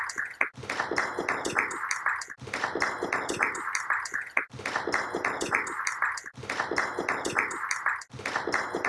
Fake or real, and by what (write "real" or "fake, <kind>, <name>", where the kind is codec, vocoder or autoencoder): real